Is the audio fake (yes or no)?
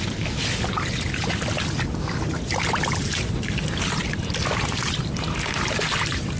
no